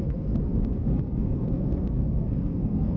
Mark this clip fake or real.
fake